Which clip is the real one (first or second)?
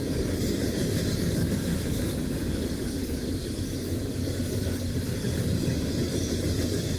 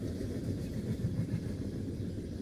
second